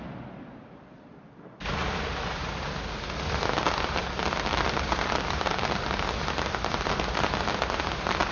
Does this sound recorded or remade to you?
recorded